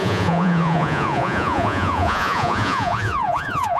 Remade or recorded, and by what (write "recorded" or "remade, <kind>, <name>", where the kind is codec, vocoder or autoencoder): remade, vocoder, Vocos